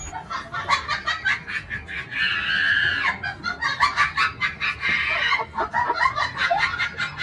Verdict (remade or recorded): recorded